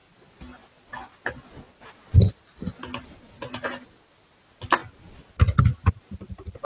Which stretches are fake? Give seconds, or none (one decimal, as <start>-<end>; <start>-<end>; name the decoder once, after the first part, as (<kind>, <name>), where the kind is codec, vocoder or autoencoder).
none

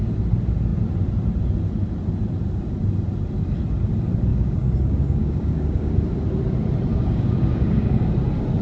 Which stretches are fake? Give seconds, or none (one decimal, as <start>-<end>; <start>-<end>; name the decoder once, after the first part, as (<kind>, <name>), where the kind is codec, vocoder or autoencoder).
4.3-5.9 (codec, DAC); 6.9-8.1

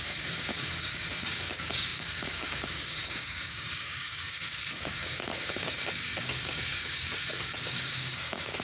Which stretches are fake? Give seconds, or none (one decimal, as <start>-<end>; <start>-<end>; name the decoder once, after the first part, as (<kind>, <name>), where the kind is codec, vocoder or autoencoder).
0.0-8.6 (codec, DAC)

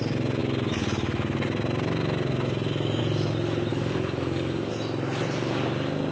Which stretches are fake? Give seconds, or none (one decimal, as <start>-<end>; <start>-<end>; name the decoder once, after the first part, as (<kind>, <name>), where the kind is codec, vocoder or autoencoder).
3.7-4.7 (codec, DAC)